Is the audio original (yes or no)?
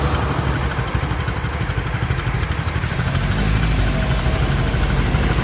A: yes